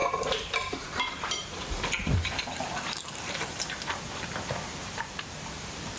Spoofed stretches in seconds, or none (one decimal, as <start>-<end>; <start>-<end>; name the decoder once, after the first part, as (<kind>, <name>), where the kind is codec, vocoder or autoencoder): 0.0-3.4 (vocoder, BigVGAN v2); 4.8-6.0